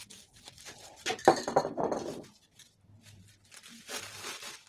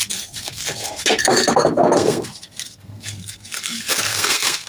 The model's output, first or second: second